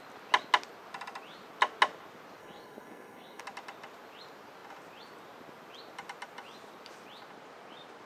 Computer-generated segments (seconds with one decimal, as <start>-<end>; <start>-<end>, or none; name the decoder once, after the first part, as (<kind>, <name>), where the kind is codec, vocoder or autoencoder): 2.4-3.4 (codec, SNAC)